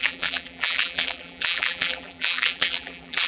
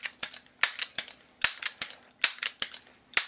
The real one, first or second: second